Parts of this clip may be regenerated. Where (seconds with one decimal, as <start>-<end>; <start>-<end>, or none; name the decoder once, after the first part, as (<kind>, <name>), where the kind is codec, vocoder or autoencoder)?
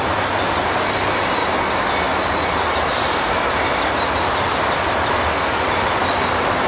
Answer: 0.0-1.4 (vocoder, BigVGAN v2); 2.0-6.7